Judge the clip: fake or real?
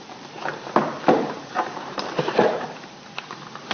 fake